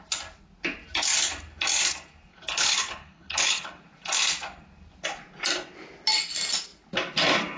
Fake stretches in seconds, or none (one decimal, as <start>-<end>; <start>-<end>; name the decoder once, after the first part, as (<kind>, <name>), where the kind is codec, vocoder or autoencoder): 2.3-3.8 (codec, HILCodec)